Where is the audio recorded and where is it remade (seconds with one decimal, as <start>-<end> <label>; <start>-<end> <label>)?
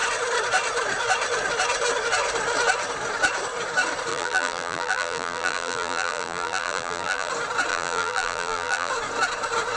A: 0.0-4.1 recorded; 4.1-7.3 remade; 7.3-7.7 recorded; 7.7-8.9 remade; 8.9-9.8 recorded